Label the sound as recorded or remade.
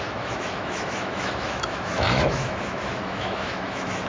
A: remade